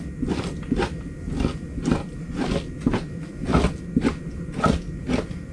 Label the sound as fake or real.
real